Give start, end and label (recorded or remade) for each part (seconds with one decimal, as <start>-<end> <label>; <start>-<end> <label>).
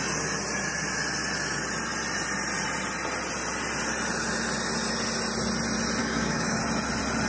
0.0-6.0 recorded; 6.0-6.6 remade; 6.6-7.3 recorded